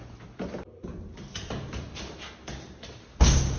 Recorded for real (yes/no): yes